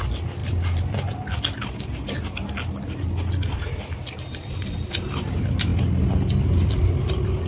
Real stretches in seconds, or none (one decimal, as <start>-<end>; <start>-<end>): 0.0-7.5

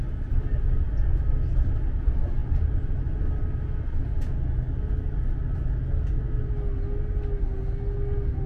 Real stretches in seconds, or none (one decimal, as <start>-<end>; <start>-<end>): 0.0-8.5

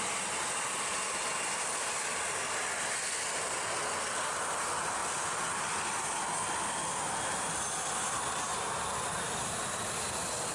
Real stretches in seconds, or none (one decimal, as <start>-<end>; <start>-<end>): 0.0-10.5

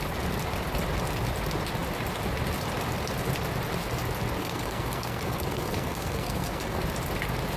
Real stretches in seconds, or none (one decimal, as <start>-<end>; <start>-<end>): 0.0-4.4; 6.8-7.6

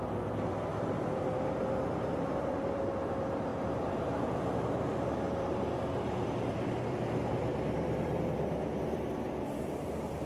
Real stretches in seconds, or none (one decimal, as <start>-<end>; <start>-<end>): none

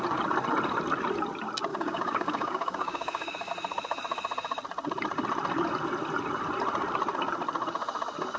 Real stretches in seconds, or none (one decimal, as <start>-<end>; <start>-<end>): 0.0-1.7; 3.5-8.4